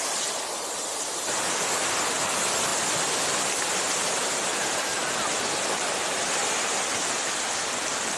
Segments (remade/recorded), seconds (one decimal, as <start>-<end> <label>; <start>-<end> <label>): 0.0-8.2 recorded